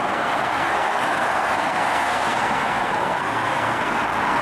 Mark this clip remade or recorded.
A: remade